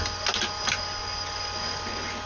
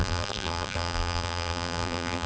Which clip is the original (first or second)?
first